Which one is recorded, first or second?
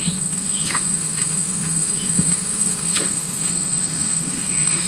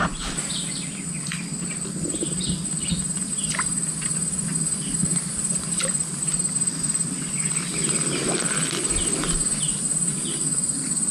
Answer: second